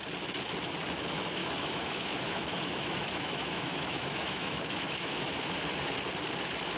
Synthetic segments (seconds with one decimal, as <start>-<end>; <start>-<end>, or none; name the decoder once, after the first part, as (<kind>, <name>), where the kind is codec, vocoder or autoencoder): 1.4-5.3 (autoencoder, DAC-VAE)